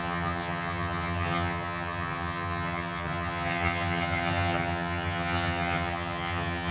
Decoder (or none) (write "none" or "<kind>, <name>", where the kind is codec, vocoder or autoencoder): vocoder, HiFi-GAN